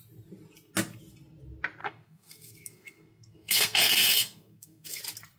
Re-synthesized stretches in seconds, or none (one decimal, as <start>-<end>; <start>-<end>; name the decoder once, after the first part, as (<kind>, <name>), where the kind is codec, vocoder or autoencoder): 1.8-5.0 (codec, SNAC)